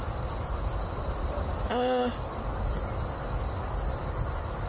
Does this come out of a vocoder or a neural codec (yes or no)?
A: no